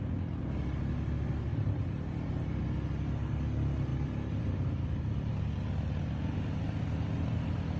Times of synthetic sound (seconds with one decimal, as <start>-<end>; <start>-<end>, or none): 1.5-2.6; 3.9-5.3